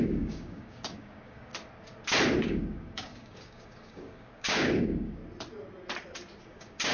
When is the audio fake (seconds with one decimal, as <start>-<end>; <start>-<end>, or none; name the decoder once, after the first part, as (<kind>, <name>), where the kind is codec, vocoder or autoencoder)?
0.0-1.5 (codec, DAC); 2.4-5.2; 6.4-6.9